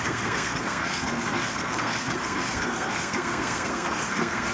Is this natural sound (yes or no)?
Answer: no